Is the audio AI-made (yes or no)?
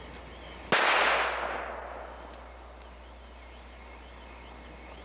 no